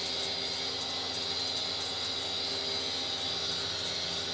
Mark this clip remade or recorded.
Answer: recorded